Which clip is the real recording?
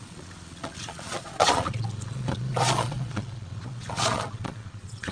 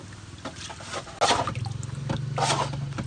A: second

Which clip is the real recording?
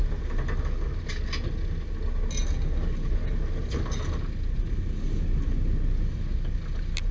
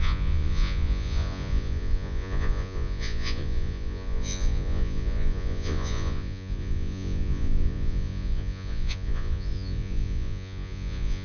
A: first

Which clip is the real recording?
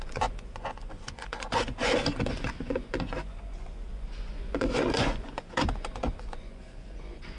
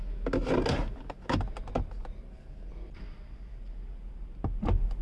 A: second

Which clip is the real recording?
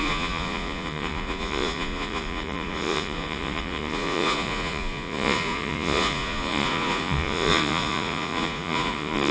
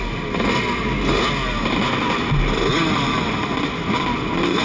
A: second